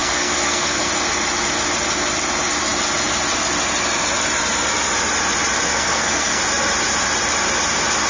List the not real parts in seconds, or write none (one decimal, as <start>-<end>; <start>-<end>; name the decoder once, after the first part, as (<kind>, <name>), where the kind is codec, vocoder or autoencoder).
0.0-0.9 (codec, SNAC); 5.7-6.4